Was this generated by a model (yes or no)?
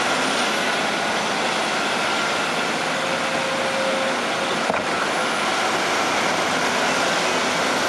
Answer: no